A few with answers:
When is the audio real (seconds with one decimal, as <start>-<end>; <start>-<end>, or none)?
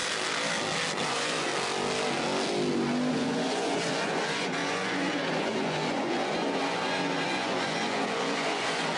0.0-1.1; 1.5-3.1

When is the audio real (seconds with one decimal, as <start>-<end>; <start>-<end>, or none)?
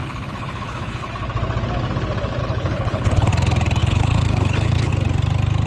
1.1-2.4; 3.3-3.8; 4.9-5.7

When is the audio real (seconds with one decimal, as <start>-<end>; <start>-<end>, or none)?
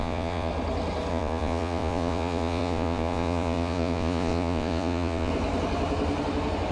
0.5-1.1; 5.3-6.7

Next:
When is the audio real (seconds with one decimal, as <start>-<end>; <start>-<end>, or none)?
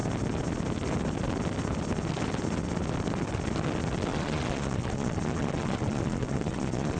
0.0-4.1